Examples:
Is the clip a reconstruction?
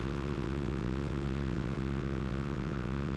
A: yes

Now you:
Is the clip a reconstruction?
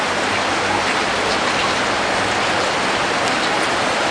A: no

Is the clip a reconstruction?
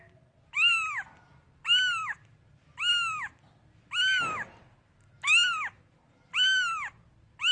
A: no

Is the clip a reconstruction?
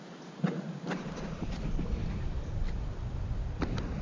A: no